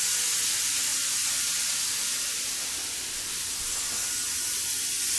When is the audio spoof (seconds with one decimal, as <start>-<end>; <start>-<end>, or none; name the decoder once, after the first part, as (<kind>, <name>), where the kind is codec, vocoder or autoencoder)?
none